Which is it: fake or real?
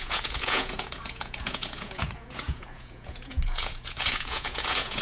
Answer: fake